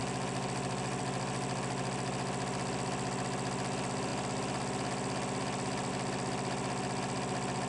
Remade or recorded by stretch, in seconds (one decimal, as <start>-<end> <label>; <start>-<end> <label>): 0.0-1.0 remade; 1.0-7.7 recorded